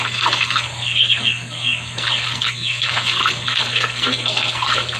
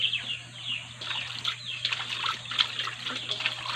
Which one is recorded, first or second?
second